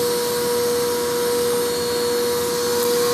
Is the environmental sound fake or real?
real